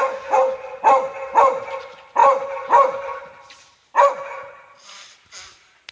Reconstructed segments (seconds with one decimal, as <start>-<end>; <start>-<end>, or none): none

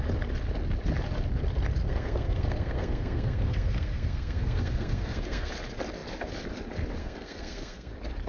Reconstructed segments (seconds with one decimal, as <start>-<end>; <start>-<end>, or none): 1.8-5.5; 7.0-7.9

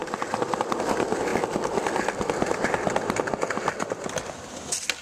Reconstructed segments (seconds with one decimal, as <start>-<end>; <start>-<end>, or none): none